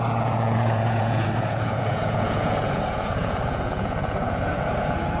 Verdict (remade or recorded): remade